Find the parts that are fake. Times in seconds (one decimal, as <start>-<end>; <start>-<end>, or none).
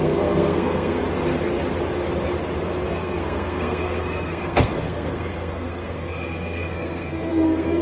0.0-1.0; 2.9-7.8